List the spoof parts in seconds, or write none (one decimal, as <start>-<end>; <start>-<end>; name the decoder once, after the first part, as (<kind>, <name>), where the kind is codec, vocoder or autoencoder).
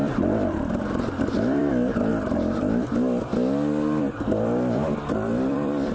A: 0.0-3.3 (vocoder, BigVGAN v2); 4.0-5.9